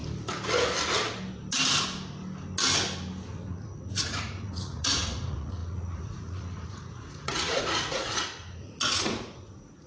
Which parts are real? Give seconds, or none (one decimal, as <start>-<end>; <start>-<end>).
0.0-3.5